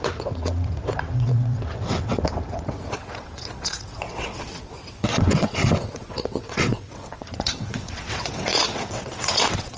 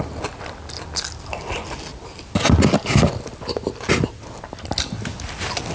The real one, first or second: second